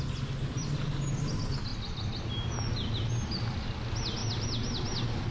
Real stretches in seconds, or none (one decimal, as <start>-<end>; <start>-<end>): 0.0-5.3